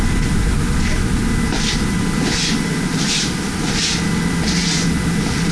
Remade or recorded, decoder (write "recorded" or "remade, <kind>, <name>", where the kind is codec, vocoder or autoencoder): recorded